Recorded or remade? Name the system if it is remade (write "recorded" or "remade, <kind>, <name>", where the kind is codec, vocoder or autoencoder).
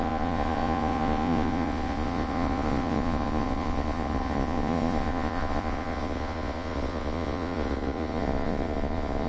remade, vocoder, Vocos